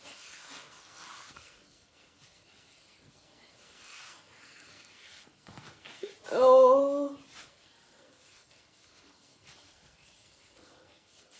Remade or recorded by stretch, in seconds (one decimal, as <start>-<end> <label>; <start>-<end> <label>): 0.0-6.1 remade; 6.1-7.4 recorded; 7.4-11.4 remade